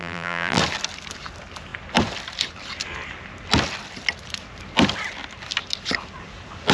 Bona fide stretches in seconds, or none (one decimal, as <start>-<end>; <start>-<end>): 0.6-6.7